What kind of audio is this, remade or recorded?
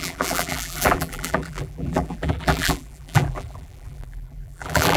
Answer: remade